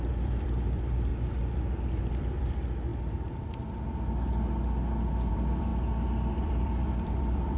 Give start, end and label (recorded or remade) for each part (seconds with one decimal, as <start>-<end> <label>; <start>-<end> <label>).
0.0-1.1 remade; 1.1-2.0 recorded; 2.0-2.9 remade; 2.9-5.3 recorded; 5.3-5.7 remade; 5.7-6.4 recorded; 6.4-7.6 remade